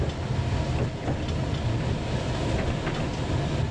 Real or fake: real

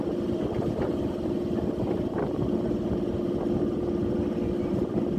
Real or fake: real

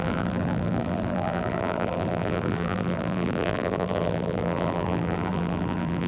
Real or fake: fake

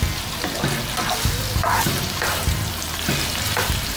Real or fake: real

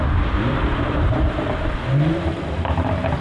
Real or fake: fake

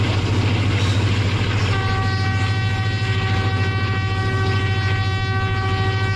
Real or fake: real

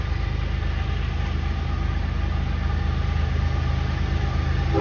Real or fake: real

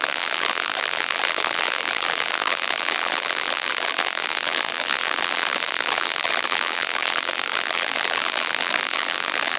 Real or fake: fake